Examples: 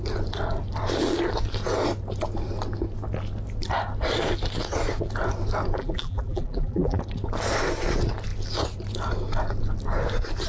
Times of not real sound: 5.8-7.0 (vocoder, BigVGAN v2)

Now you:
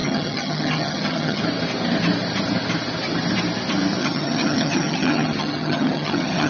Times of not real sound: 0.0-1.4 (vocoder, HiFi-GAN); 4.0-6.5

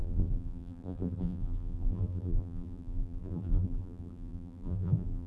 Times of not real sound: 0.0-5.3 (vocoder, BigVGAN v2)

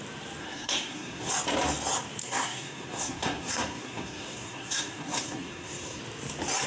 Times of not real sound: 0.4-1.3 (codec, SNAC); 2.2-6.0